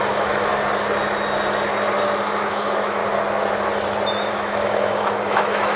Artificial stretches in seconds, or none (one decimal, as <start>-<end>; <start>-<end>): 0.0-0.5; 2.5-3.0; 4.3-5.8